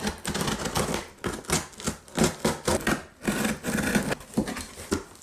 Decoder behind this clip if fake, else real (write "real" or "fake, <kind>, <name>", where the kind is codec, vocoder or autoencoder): real